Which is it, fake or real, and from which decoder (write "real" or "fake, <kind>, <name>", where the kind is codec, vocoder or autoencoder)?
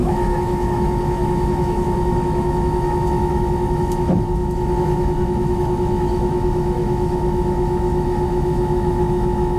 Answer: fake, autoencoder, DAC-VAE